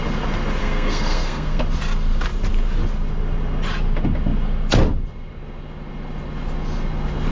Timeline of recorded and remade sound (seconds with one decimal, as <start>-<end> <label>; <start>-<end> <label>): 0.0-0.6 recorded; 0.6-1.6 remade; 1.6-7.3 recorded